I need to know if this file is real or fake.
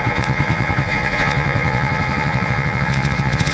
fake